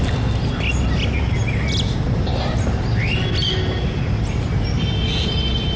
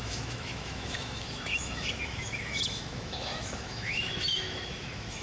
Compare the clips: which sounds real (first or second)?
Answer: first